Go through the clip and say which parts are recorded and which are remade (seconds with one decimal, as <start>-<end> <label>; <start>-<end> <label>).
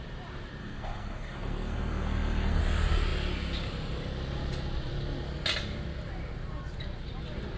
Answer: 0.0-0.6 recorded; 0.6-2.6 remade; 2.6-7.6 recorded